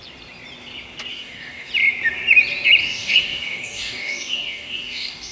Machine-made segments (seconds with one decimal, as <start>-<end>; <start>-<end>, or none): 1.1-1.7; 2.8-5.3